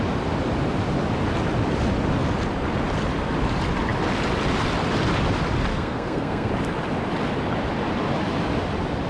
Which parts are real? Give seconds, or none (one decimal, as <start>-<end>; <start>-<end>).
0.0-5.7; 6.5-9.1